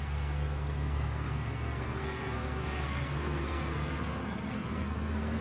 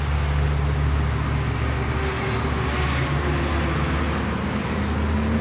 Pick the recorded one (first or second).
second